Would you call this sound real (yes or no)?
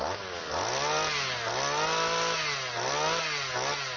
yes